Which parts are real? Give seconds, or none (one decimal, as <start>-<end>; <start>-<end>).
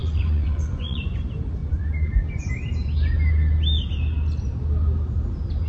1.1-1.6; 2.5-5.7